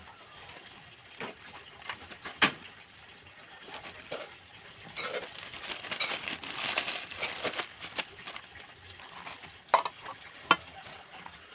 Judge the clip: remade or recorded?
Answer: recorded